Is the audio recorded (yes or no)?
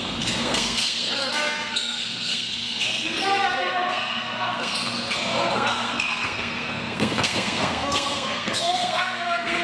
no